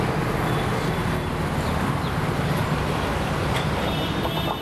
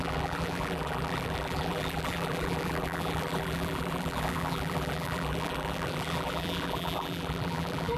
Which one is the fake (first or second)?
second